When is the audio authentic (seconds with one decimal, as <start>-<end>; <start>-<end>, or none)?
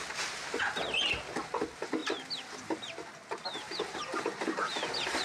0.0-5.2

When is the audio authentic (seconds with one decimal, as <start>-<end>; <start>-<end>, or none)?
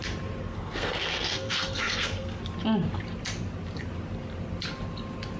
0.0-0.4; 2.4-5.4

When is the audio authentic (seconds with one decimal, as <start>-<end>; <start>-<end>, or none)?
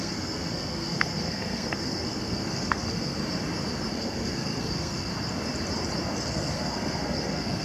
3.2-3.9; 5.1-6.3